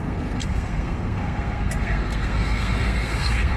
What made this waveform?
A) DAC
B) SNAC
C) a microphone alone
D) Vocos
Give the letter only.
B